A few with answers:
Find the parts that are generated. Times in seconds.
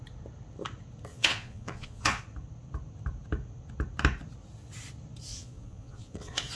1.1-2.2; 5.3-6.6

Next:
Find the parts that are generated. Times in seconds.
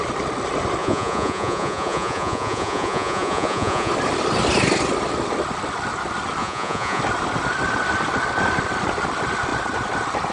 0.8-3.9; 6.4-7.0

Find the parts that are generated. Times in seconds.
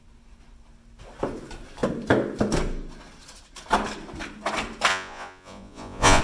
4.9-6.2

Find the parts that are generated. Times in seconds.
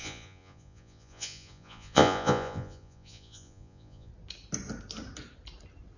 0.0-4.1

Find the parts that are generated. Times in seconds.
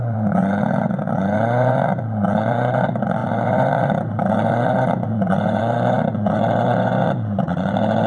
0.0-8.1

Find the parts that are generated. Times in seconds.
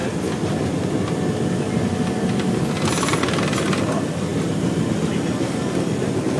none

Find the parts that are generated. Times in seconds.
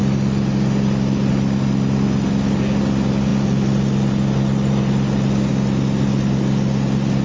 none